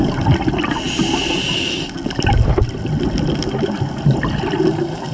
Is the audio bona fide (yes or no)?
yes